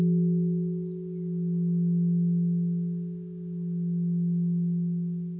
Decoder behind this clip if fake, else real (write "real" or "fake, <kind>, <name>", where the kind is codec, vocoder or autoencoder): real